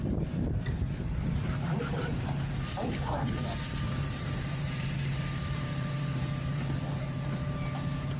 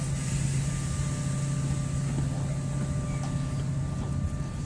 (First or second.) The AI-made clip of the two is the first